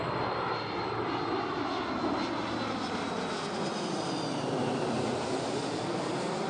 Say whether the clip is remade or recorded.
recorded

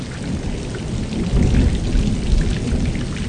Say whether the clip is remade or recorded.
recorded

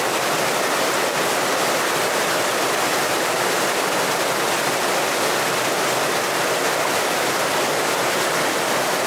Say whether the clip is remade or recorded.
recorded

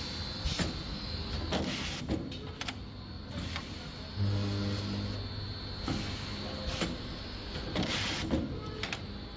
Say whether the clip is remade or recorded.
recorded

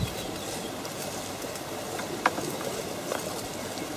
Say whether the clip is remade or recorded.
recorded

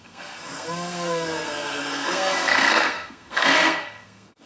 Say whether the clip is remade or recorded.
remade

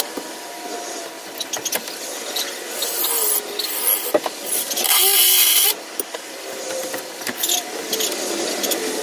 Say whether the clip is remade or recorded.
recorded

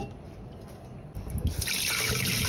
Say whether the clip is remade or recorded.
recorded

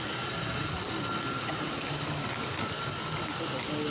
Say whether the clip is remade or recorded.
recorded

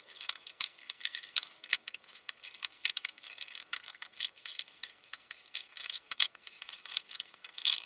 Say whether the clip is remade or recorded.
remade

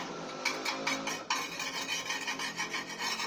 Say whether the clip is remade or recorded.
recorded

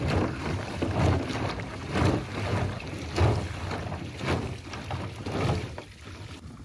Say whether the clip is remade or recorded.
recorded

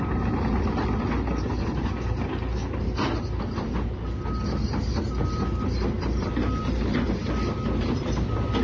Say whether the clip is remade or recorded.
recorded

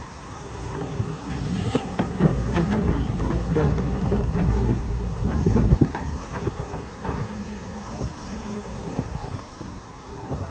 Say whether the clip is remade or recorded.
remade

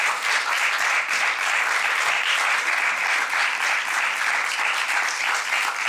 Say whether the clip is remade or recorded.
recorded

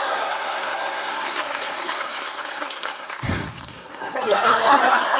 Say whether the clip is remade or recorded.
remade